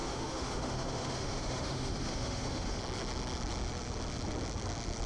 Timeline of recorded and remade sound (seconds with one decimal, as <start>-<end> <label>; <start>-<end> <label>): 0.0-2.8 remade; 2.8-5.1 recorded